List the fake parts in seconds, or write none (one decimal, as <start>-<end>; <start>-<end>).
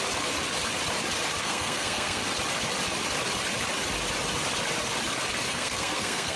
1.4-2.2; 5.5-6.4